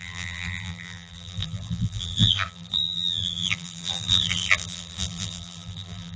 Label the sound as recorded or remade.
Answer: remade